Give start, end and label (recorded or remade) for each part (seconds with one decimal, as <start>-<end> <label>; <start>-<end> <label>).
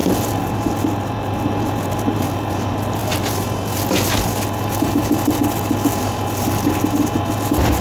0.0-7.8 recorded